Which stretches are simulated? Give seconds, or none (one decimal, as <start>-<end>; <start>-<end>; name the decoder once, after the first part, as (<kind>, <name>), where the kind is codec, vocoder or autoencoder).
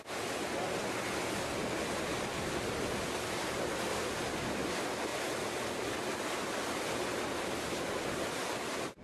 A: none